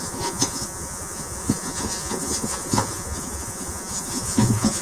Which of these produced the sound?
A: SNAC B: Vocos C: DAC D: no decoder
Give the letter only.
B